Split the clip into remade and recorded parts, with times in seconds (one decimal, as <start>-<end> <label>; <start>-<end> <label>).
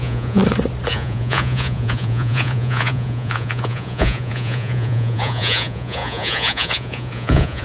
0.0-0.4 remade; 0.4-0.9 recorded; 0.9-7.6 remade